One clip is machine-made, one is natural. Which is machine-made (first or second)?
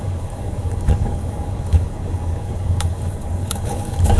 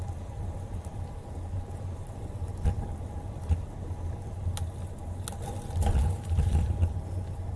first